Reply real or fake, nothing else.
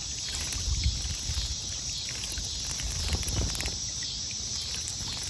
real